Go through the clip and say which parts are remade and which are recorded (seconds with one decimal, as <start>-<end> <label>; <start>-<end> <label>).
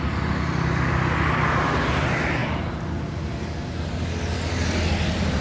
0.0-5.4 recorded